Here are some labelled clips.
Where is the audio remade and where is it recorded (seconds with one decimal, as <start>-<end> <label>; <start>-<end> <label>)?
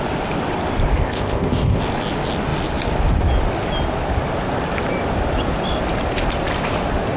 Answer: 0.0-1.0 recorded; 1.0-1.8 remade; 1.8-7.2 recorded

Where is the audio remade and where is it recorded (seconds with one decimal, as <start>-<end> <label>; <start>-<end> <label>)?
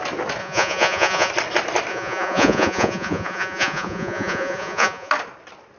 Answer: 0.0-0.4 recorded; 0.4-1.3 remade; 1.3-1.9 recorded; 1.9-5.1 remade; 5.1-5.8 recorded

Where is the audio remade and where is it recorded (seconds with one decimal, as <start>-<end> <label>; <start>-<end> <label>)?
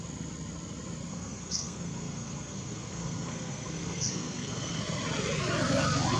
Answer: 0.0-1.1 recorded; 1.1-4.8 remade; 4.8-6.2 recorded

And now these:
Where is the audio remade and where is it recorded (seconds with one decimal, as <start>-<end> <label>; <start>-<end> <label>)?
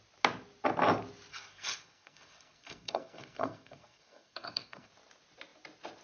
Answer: 0.0-1.3 recorded; 1.3-4.9 remade; 4.9-6.0 recorded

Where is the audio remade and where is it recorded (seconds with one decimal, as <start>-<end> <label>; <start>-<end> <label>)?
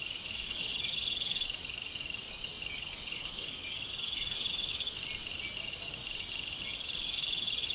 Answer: 0.0-5.0 remade; 5.0-5.6 recorded; 5.6-6.0 remade; 6.0-6.7 recorded; 6.7-7.7 remade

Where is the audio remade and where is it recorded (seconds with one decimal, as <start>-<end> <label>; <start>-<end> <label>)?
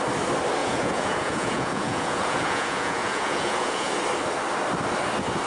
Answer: 0.0-0.6 recorded; 0.6-3.9 remade; 3.9-5.5 recorded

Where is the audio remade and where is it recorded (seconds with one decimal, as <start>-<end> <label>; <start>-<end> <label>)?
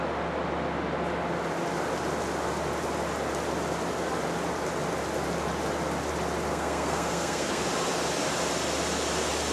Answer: 0.0-6.5 recorded; 6.5-7.6 remade; 7.6-9.5 recorded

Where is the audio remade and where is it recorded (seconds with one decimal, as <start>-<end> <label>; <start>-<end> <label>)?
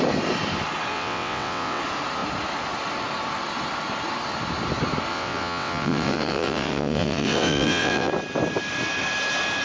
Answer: 0.0-0.9 recorded; 0.9-1.8 remade; 1.8-5.1 recorded; 5.1-8.1 remade; 8.1-9.6 recorded